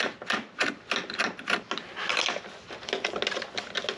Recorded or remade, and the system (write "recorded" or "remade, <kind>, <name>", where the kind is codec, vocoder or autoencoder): recorded